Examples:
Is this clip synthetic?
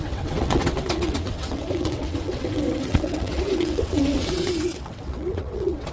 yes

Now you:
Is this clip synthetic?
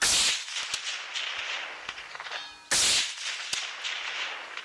no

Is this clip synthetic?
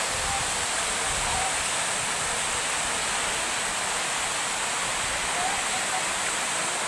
no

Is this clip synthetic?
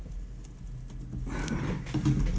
no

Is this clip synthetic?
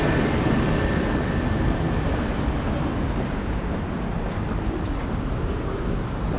no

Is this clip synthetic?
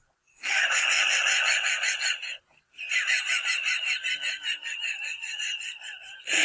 no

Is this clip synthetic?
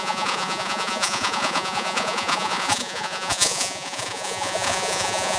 yes